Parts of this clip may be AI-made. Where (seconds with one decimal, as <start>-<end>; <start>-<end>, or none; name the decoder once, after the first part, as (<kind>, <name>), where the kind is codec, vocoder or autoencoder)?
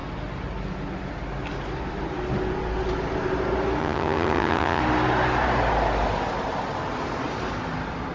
3.8-4.8 (vocoder, HiFi-GAN)